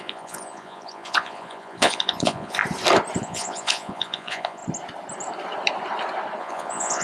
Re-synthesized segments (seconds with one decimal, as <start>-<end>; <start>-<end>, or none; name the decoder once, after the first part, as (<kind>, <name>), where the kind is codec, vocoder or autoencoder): 0.0-2.6 (vocoder, Vocos); 3.2-4.6; 6.4-7.0